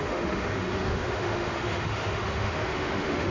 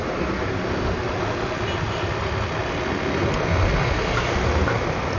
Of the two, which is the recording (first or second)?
second